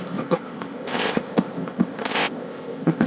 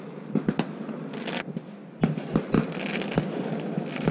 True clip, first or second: second